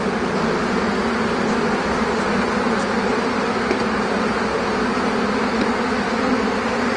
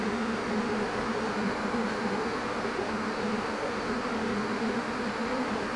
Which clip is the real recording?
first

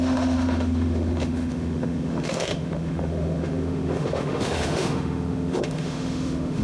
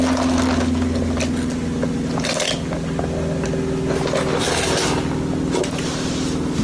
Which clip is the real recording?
second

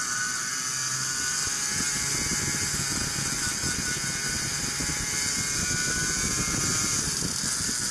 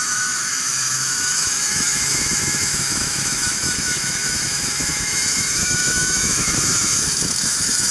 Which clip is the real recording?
first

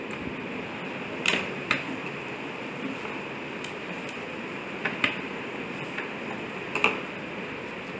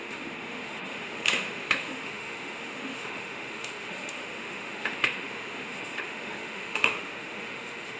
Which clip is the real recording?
first